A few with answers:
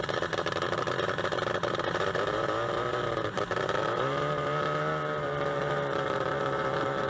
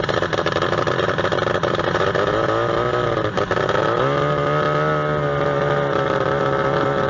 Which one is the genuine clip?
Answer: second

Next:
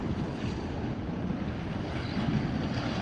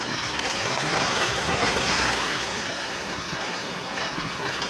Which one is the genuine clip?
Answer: first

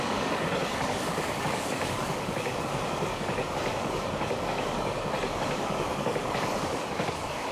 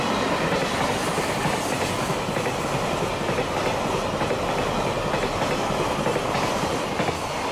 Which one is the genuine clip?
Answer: second